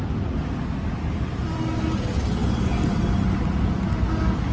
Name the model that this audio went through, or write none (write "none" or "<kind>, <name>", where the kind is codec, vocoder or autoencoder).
none